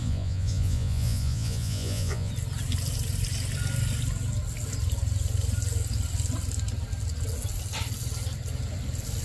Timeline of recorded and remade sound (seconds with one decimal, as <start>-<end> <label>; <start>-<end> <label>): 0.0-2.3 remade; 2.3-9.2 recorded